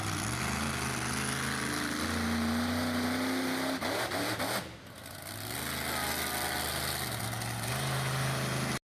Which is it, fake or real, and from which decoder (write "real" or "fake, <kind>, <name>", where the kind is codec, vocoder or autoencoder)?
real